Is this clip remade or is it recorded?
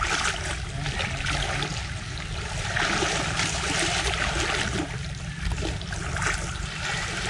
recorded